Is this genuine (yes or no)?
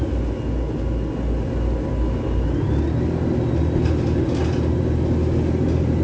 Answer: yes